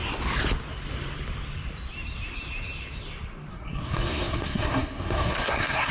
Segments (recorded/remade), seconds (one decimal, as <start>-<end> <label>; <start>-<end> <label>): 0.0-3.5 recorded; 3.5-5.9 remade